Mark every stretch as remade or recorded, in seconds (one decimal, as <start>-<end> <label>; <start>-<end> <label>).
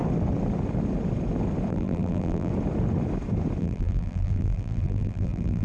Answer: 0.0-1.7 recorded; 1.7-2.5 remade; 2.5-3.6 recorded; 3.6-5.6 remade